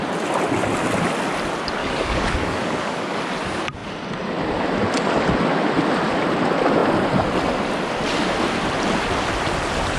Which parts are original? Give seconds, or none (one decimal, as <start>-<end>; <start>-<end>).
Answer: 0.0-1.8; 3.2-10.0